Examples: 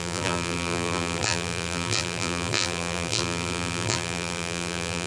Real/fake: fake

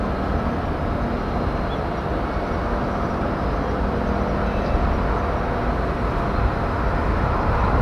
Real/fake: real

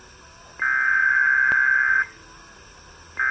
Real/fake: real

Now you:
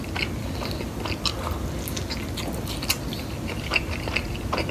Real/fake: real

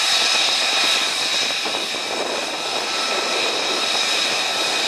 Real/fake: real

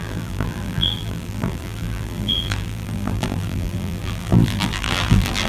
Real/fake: fake